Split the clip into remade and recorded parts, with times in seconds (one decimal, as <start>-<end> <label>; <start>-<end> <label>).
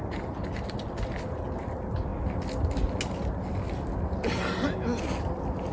0.0-5.7 recorded